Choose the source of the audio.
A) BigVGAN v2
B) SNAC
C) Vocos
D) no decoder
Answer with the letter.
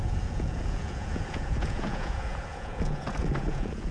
C